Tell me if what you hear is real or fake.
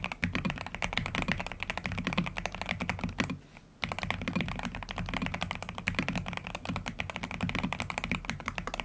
real